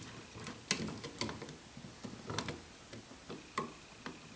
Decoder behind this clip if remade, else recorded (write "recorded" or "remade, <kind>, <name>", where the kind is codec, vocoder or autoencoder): recorded